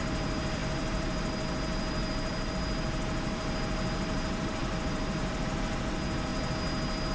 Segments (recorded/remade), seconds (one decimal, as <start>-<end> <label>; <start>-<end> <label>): 0.0-6.3 remade; 6.3-7.1 recorded